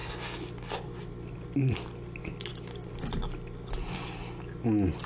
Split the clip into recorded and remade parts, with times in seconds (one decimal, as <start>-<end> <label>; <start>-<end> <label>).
0.0-5.1 recorded